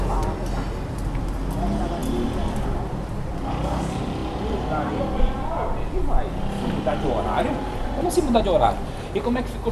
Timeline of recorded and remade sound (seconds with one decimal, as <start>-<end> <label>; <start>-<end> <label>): 0.0-9.7 recorded

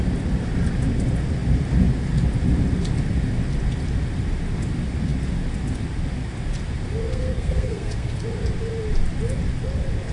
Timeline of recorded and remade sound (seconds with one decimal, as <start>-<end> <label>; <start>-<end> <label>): 0.0-7.1 recorded; 7.1-8.1 remade; 8.1-10.1 recorded

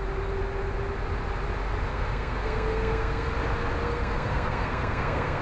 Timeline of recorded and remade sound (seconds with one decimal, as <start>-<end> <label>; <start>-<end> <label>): 0.0-1.9 recorded; 1.9-3.3 remade; 3.3-3.8 recorded; 3.8-5.4 remade

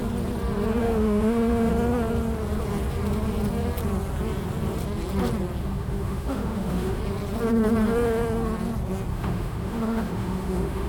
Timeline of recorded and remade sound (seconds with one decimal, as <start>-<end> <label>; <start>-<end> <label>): 0.0-0.8 recorded; 0.8-1.7 remade; 1.7-5.6 recorded; 5.6-7.0 remade; 7.0-9.1 recorded; 9.1-10.9 remade

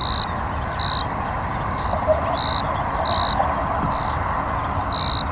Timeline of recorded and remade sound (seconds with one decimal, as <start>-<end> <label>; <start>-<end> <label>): 0.0-5.3 recorded